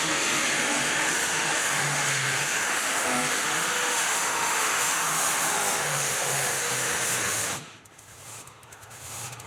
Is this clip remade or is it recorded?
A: remade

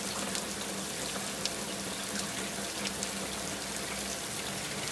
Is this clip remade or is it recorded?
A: recorded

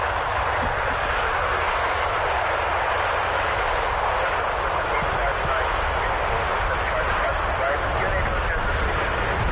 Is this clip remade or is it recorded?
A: recorded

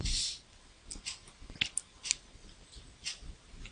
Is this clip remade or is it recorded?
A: recorded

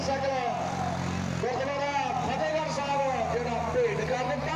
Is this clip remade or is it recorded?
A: recorded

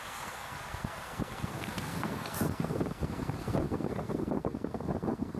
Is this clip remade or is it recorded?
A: remade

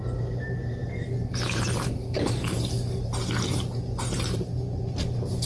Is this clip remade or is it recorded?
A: remade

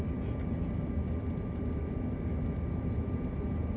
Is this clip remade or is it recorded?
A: recorded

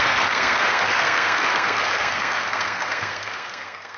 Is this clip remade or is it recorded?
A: remade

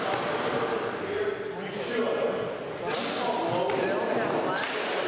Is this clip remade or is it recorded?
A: recorded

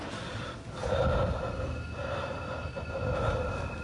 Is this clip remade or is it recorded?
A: recorded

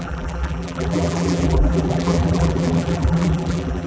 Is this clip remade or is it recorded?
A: remade